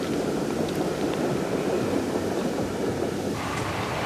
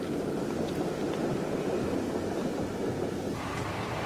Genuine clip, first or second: second